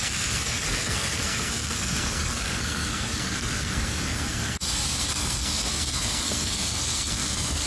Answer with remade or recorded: remade